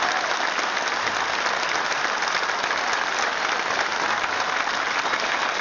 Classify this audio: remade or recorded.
recorded